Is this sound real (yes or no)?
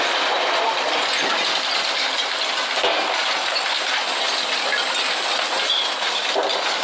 yes